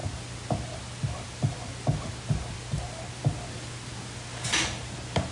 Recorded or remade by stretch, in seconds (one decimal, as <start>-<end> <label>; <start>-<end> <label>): 0.0-5.3 recorded